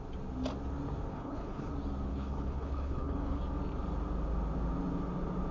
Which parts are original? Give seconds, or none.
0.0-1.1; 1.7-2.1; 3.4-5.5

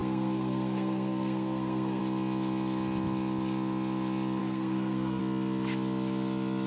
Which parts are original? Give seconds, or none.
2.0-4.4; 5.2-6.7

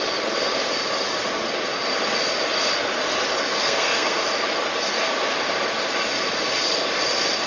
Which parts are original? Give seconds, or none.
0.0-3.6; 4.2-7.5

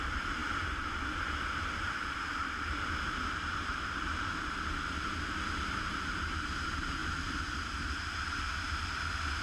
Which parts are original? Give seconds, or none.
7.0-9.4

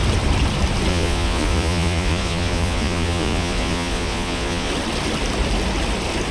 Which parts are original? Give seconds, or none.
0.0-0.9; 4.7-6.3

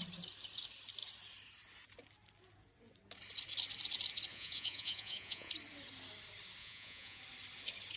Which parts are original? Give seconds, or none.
0.0-4.3; 5.5-6.6; 7.2-8.0